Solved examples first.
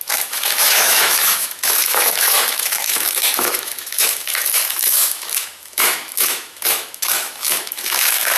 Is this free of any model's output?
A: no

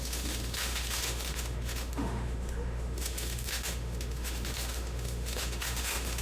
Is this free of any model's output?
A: no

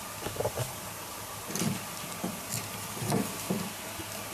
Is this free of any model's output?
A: yes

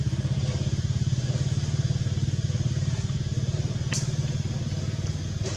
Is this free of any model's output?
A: yes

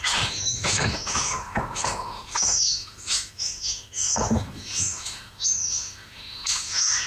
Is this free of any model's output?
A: no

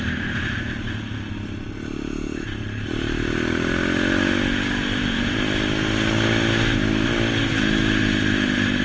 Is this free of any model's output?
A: yes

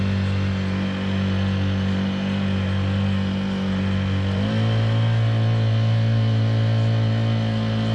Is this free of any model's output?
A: yes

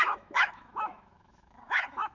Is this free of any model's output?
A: no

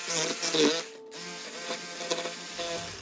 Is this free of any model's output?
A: yes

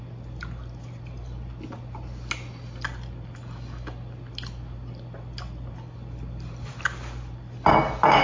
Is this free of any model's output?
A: yes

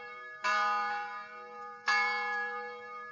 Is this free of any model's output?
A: yes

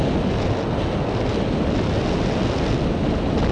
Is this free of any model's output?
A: yes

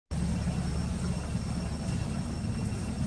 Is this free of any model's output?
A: yes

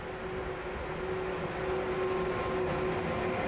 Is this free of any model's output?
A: yes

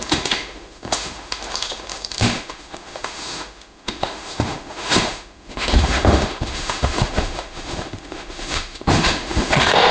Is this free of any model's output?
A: no